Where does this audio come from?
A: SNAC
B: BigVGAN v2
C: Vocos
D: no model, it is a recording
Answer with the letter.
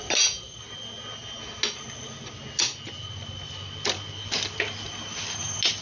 D